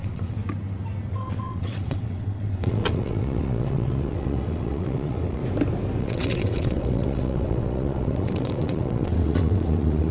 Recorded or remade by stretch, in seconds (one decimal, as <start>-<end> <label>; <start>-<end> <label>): 0.0-0.4 remade; 0.4-1.1 recorded; 1.1-5.4 remade; 5.4-6.0 recorded; 6.0-10.1 remade